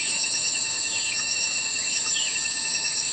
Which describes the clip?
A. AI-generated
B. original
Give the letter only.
A